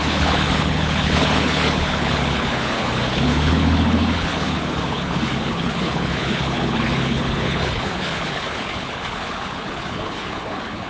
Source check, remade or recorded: remade